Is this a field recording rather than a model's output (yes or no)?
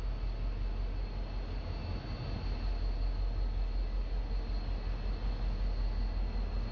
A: yes